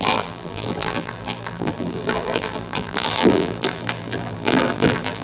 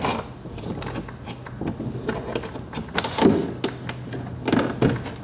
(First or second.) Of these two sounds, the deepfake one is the first